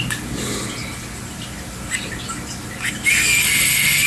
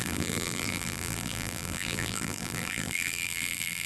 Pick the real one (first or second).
first